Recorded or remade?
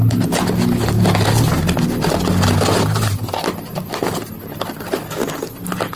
recorded